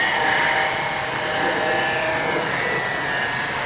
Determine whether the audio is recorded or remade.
recorded